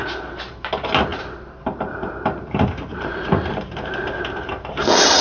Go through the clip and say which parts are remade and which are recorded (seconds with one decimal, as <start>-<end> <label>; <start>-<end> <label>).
0.0-1.1 recorded; 1.1-4.2 remade; 4.2-5.2 recorded